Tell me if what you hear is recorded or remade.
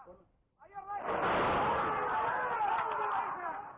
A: recorded